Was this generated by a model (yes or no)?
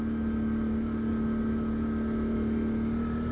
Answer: no